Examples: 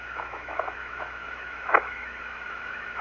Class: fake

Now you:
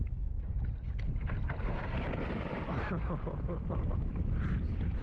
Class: real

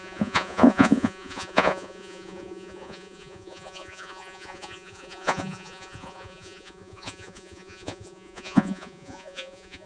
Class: fake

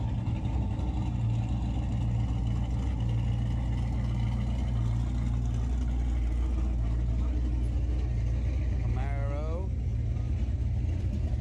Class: real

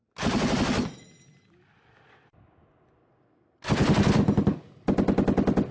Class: real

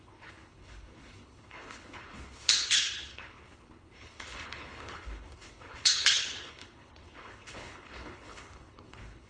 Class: fake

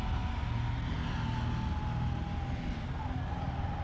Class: real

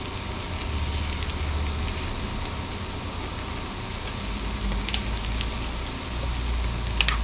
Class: real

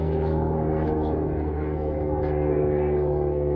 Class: fake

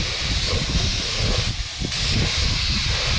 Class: real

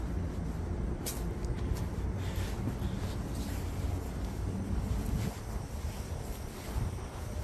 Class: real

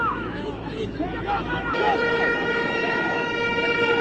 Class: fake